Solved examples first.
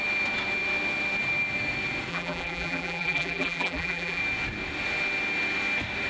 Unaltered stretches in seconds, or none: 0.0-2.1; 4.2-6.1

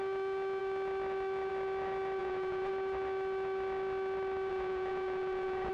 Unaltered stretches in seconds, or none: 0.0-2.2; 2.7-4.5

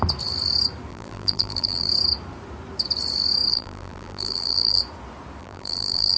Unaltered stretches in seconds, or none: 0.0-0.9; 1.9-3.5; 4.8-5.4

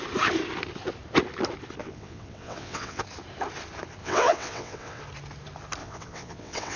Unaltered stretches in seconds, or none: 0.0-1.8; 3.0-4.0; 5.0-5.8

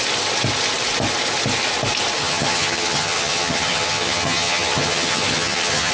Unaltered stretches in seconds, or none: 0.0-2.2

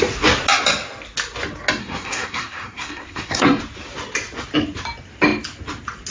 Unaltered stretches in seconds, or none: 0.0-1.8; 3.6-6.1